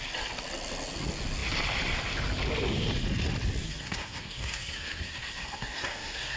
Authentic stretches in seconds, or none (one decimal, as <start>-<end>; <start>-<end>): 0.0-3.6